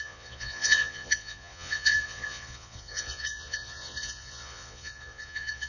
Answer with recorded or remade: remade